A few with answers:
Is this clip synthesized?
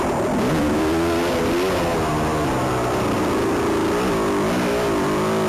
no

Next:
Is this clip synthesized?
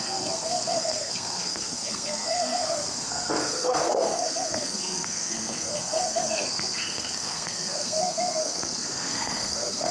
yes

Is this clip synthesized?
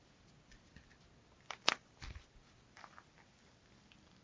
no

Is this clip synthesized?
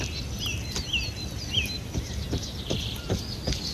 no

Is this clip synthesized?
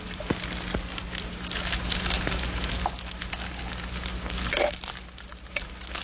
no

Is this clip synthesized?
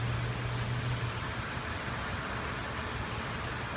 no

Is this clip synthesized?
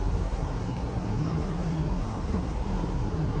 yes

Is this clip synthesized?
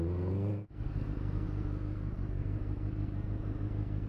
yes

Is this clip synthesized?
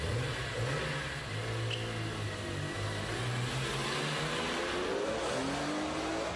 no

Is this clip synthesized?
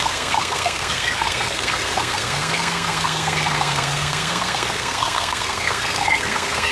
yes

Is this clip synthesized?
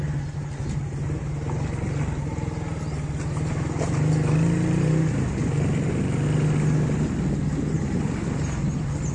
no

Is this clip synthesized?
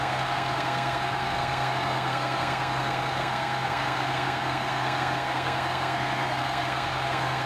yes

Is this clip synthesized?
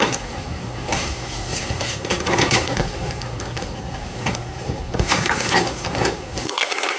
yes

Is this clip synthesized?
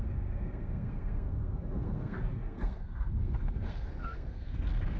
yes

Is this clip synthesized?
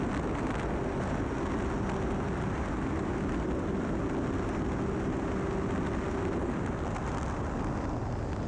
no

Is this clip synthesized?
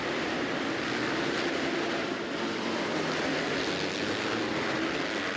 no